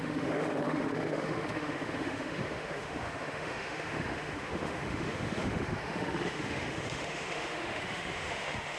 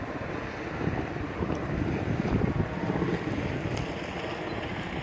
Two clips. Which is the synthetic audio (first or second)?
first